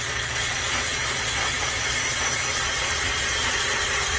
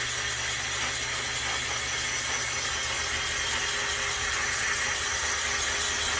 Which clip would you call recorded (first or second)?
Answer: second